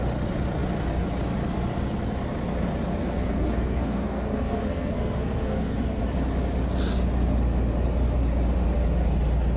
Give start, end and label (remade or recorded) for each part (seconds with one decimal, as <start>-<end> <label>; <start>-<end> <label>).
0.0-3.0 recorded; 3.0-6.0 remade; 6.0-9.6 recorded